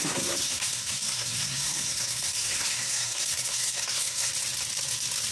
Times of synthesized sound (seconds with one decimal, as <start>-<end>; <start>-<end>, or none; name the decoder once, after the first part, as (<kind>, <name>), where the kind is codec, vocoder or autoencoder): 0.0-4.3 (codec, SNAC)